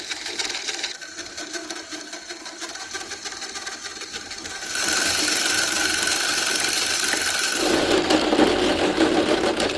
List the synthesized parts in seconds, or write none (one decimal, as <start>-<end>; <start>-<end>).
0.0-3.2; 3.8-4.6; 8.7-9.8